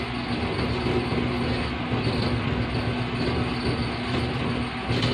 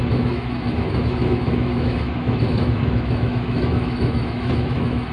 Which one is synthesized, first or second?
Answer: second